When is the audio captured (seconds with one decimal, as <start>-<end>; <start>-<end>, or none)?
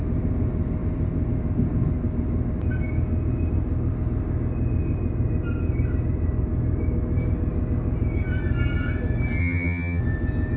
0.0-9.4; 10.0-10.6